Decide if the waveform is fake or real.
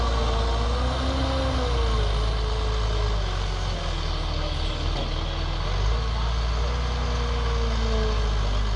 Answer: real